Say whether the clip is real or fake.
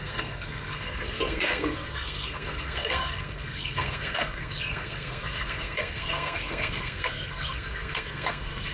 fake